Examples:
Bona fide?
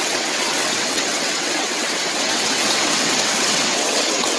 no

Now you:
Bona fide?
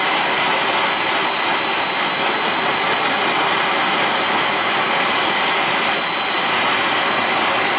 no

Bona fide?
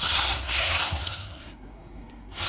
no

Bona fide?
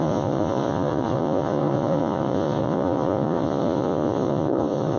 no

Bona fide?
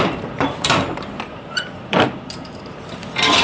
no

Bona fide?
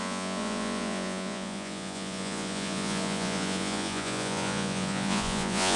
no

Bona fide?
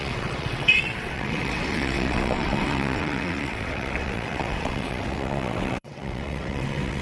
no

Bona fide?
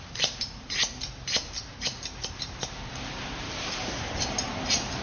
no